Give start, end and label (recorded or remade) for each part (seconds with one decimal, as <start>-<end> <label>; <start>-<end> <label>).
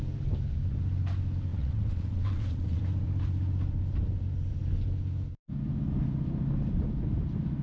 0.0-1.5 recorded; 1.5-2.8 remade; 2.8-7.6 recorded